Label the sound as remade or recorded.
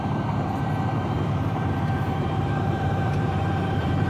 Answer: remade